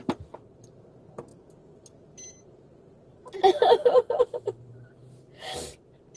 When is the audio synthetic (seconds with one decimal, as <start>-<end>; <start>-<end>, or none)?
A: none